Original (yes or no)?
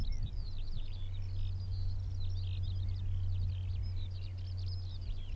yes